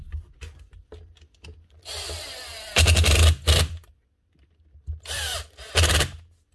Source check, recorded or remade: recorded